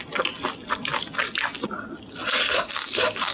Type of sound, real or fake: real